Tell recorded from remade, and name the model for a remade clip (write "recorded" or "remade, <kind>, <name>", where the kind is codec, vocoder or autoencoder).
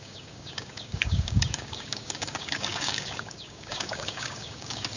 remade, codec, DAC